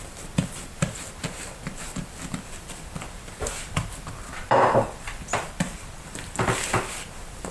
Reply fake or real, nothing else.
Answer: fake